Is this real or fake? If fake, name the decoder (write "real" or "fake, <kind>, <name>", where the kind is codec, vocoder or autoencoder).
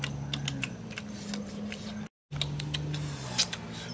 real